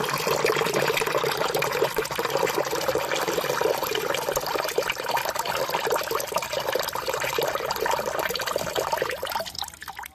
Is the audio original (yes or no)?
yes